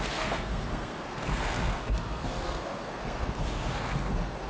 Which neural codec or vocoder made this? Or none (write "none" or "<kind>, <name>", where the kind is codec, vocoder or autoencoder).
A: codec, SNAC